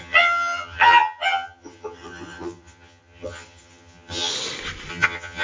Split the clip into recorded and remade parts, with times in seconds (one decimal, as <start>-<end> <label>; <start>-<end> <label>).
0.0-4.3 remade; 4.3-4.9 recorded; 4.9-5.4 remade

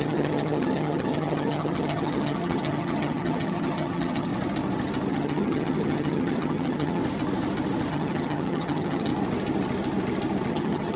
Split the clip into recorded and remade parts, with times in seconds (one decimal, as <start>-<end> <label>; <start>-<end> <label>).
0.0-4.3 remade; 4.3-5.1 recorded; 5.1-7.0 remade; 7.0-7.9 recorded; 7.9-9.1 remade; 9.1-10.5 recorded; 10.5-11.0 remade

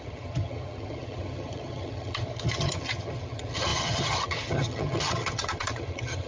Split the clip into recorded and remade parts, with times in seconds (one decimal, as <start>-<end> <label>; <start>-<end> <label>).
0.0-6.3 remade

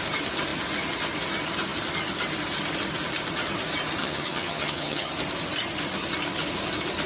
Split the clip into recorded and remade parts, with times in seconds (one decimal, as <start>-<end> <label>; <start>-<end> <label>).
0.0-4.0 recorded; 4.0-5.1 remade; 5.1-7.1 recorded

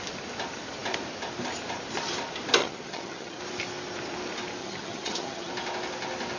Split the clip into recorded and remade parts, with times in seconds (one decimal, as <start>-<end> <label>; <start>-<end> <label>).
0.0-2.6 recorded; 2.6-3.4 remade; 3.4-4.6 recorded; 4.6-5.5 remade; 5.5-6.4 recorded